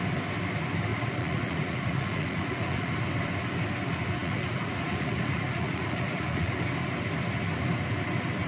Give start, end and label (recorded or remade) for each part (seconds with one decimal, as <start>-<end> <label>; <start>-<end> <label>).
0.0-0.9 recorded; 0.9-2.9 remade; 2.9-4.2 recorded; 4.2-6.6 remade; 6.6-8.5 recorded